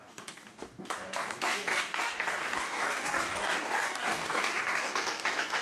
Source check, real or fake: fake